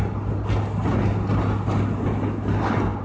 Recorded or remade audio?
recorded